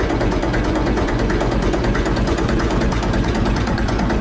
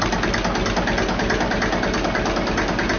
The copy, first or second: first